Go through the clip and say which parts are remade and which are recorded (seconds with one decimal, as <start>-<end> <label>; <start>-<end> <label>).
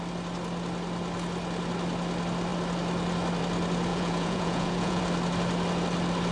0.0-3.9 recorded; 3.9-5.0 remade; 5.0-6.3 recorded